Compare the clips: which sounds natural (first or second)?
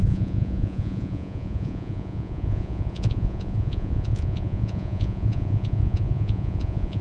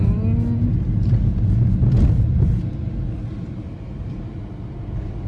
second